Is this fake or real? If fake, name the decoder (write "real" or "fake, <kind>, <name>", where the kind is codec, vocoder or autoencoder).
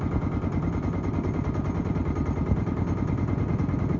real